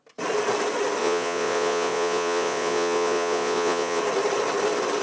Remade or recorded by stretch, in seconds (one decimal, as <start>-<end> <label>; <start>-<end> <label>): 0.0-1.0 recorded; 1.0-4.0 remade; 4.0-5.0 recorded

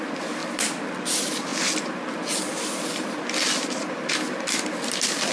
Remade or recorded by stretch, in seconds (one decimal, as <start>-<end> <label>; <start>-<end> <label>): 0.0-0.4 recorded; 0.4-1.1 remade; 1.1-1.5 recorded; 1.5-4.1 remade; 4.1-5.3 recorded

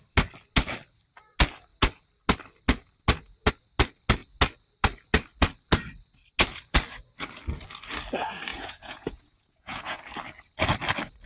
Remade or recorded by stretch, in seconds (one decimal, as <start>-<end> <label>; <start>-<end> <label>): 0.0-8.5 recorded; 8.5-10.0 remade; 10.0-11.3 recorded

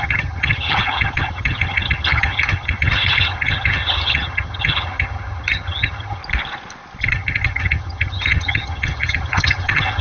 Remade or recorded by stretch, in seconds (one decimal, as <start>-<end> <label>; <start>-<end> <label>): 0.0-6.2 remade; 6.2-7.0 recorded; 7.0-10.0 remade

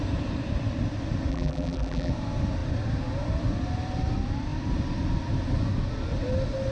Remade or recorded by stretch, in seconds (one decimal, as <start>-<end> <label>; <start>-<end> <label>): 0.0-1.3 recorded; 1.3-2.1 remade; 2.1-6.7 recorded